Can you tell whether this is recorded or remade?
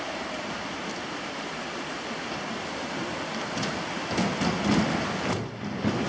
recorded